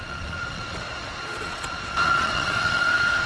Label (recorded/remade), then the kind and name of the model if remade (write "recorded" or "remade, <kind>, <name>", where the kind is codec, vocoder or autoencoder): remade, vocoder, Vocos